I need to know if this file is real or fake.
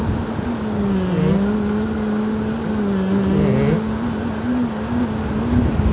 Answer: real